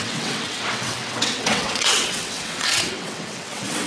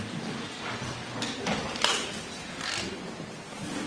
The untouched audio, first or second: second